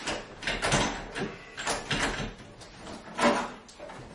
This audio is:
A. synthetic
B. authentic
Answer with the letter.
B